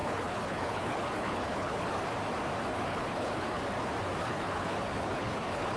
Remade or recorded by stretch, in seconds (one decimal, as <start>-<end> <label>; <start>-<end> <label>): 0.0-2.0 remade; 2.0-2.7 recorded; 2.7-3.6 remade; 3.6-4.2 recorded; 4.2-5.8 remade